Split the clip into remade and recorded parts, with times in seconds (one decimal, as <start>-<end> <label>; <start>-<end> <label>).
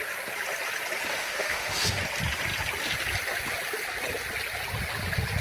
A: 0.0-1.1 recorded; 1.1-2.0 remade; 2.0-5.4 recorded